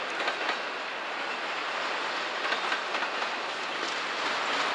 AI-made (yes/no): no